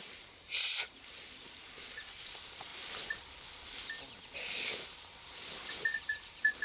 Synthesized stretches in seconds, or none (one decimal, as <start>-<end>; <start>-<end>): 0.0-2.7; 6.0-6.6